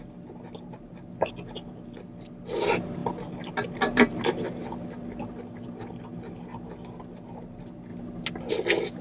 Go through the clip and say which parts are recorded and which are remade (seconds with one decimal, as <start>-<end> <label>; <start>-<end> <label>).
0.0-9.0 recorded